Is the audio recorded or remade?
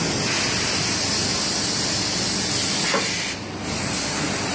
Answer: recorded